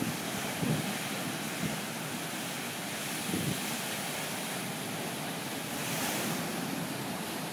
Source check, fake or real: fake